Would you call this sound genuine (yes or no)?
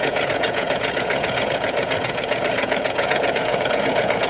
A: no